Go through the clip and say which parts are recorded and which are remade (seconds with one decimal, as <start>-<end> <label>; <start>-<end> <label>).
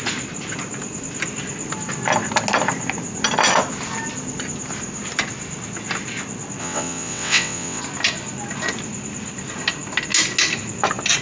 0.0-6.6 recorded; 6.6-7.8 remade; 7.8-11.2 recorded